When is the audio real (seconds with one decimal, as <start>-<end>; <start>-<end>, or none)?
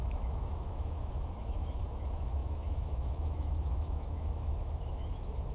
none